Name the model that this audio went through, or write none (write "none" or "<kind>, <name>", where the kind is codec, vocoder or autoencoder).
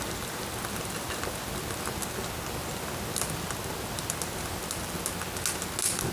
none